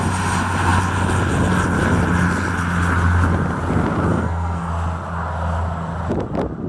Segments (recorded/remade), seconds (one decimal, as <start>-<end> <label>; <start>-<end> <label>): 0.0-4.1 recorded; 4.1-4.7 remade; 4.7-6.7 recorded